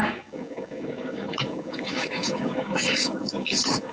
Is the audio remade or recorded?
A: remade